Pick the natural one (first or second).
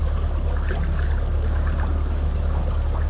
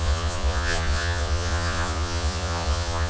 first